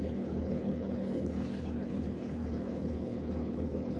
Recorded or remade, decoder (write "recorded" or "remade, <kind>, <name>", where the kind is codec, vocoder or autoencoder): remade, codec, HILCodec